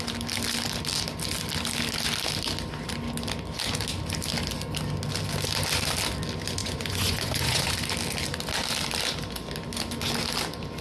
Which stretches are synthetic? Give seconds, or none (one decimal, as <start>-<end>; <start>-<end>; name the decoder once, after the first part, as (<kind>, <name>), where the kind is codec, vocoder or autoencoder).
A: 6.6-7.7 (vocoder, Vocos)